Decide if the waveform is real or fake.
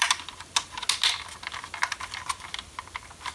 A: real